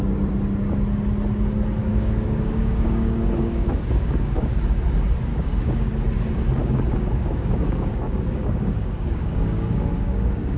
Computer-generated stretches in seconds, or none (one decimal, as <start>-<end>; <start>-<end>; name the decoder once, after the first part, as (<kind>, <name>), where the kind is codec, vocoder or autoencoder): 1.8-4.5 (codec, DAC); 5.3-5.9; 6.6-10.6